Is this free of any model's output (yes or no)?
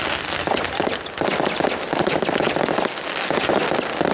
yes